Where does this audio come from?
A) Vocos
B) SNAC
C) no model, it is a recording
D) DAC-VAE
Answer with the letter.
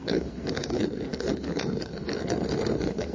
B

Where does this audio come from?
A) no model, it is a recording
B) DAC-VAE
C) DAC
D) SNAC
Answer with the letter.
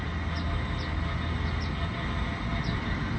A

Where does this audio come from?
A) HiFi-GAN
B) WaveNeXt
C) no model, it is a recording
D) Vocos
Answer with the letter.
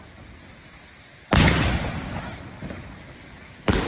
C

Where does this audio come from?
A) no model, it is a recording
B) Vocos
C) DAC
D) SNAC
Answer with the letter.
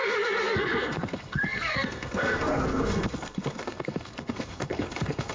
D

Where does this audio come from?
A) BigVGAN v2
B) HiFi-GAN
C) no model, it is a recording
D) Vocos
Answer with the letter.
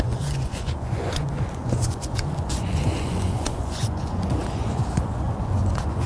D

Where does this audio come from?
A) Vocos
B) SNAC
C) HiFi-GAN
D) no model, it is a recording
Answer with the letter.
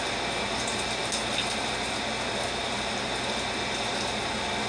D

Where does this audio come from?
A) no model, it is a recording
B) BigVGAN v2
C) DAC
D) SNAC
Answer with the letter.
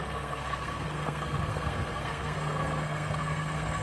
D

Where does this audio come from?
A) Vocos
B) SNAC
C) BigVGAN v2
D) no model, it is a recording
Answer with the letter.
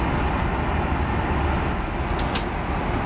D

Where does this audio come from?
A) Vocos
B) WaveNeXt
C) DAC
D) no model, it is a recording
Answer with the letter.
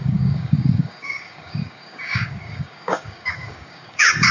C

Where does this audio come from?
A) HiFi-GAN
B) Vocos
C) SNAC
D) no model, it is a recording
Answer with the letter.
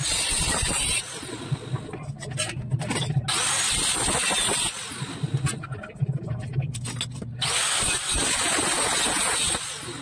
D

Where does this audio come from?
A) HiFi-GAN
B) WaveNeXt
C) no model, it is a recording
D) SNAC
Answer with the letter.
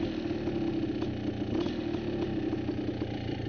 C